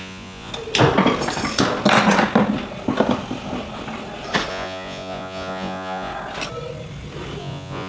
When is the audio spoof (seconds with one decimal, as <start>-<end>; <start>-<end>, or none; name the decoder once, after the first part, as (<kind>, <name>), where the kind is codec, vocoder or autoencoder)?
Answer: 0.0-0.5 (vocoder, Vocos); 4.5-6.1; 7.4-7.9